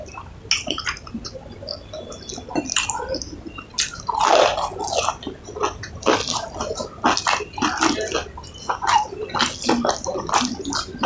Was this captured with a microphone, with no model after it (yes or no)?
yes